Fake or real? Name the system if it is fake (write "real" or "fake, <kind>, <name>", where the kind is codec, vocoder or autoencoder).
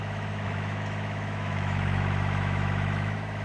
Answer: fake, autoencoder, DAC-VAE